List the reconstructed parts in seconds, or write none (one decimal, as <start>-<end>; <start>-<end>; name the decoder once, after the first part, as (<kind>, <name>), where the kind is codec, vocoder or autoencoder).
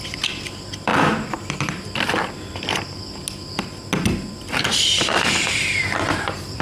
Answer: 0.0-0.9 (vocoder, BigVGAN v2); 4.5-6.6